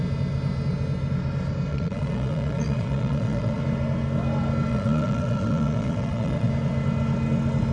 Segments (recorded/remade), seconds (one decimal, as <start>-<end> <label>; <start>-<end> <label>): 0.0-1.7 recorded; 1.7-3.6 remade; 3.6-4.7 recorded; 4.7-6.5 remade; 6.5-7.7 recorded